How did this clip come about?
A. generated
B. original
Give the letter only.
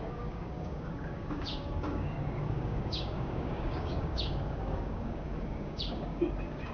A